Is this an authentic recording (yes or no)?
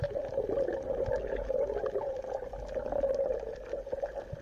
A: yes